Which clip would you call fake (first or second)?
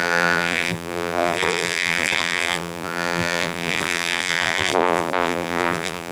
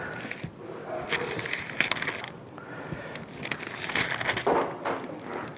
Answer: first